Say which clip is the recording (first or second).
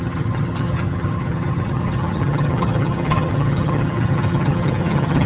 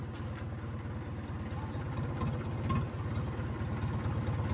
second